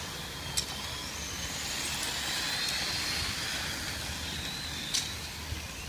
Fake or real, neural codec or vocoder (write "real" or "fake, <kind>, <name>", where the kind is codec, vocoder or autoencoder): real